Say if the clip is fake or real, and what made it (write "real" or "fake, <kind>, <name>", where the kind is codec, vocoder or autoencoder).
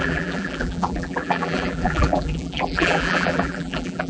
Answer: fake, vocoder, BigVGAN v2